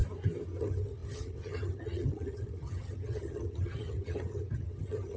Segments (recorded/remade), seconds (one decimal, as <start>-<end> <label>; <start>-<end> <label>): 0.0-0.6 recorded; 0.6-5.2 remade